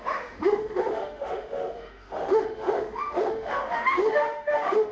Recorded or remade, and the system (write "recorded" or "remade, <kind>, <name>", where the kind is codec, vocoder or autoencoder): remade, autoencoder, DAC-VAE